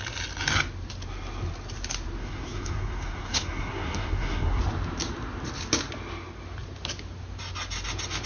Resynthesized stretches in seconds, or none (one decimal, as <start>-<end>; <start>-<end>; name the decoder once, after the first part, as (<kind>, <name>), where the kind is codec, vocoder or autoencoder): 2.2-4.6 (codec, SNAC)